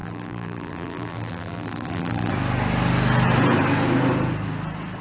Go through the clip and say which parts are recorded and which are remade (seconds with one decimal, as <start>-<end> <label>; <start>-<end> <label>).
0.0-2.3 remade; 2.3-5.0 recorded